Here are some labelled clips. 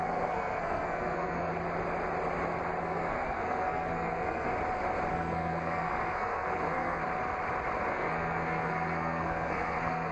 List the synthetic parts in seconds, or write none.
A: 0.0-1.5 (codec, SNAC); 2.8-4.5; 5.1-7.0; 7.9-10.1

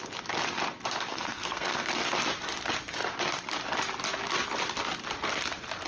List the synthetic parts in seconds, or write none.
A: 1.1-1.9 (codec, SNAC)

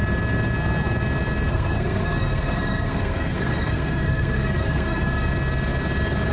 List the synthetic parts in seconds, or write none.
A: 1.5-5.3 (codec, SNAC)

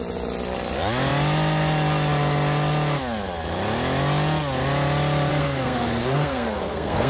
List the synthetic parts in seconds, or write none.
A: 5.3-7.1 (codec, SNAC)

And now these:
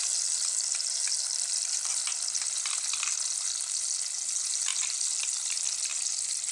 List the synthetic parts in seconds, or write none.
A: none

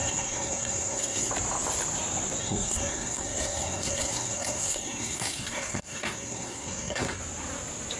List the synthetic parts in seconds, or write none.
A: 0.0-1.3 (codec, SNAC); 2.4-7.2